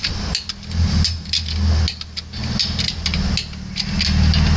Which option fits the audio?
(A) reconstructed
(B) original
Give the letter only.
B